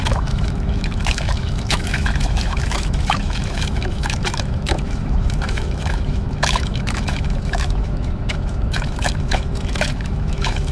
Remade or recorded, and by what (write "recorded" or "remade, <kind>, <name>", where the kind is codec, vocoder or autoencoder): remade, autoencoder, DAC-VAE